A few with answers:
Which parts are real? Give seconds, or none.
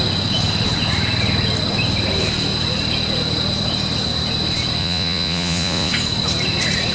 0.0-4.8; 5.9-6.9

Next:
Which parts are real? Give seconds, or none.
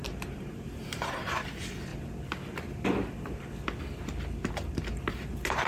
1.9-4.5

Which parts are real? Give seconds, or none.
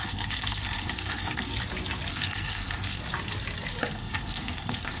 1.5-2.1; 3.0-3.9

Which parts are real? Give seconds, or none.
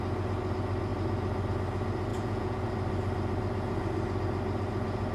0.0-2.1; 2.7-5.1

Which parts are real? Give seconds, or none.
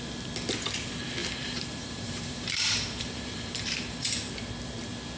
0.0-1.2; 4.3-5.2